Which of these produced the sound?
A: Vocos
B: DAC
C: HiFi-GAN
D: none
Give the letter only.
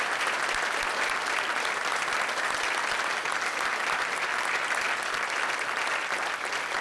D